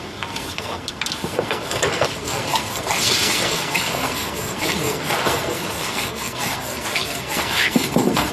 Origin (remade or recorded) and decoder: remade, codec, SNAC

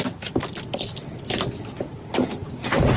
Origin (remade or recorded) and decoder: recorded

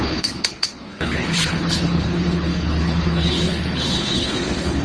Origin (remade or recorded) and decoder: remade, codec, HILCodec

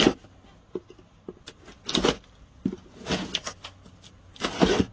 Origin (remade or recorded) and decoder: recorded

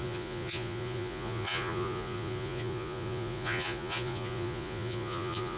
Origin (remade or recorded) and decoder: remade, vocoder, Vocos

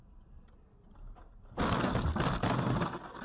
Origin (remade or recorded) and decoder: recorded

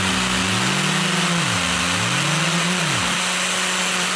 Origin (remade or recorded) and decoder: recorded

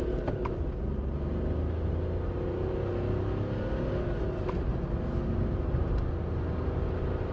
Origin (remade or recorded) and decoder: recorded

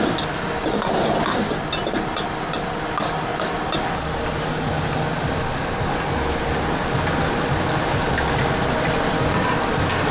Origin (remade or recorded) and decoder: recorded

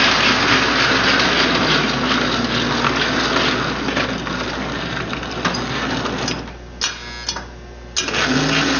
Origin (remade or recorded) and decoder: recorded